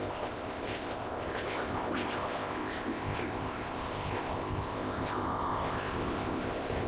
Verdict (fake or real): fake